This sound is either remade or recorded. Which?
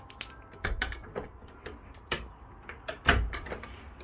recorded